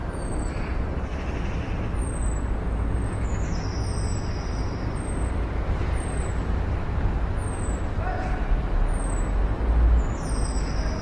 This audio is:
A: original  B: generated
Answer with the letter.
A